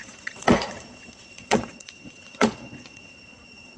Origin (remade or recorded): remade